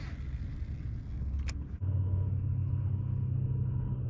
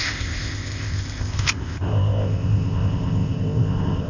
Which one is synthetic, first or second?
second